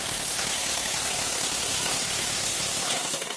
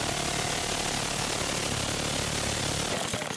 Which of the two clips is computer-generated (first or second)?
first